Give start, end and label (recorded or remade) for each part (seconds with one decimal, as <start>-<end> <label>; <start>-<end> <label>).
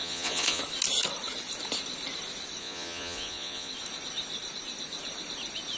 0.0-0.6 remade; 0.6-2.6 recorded; 2.6-3.7 remade; 3.7-5.8 recorded